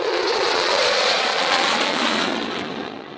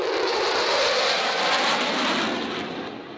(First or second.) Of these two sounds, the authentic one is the second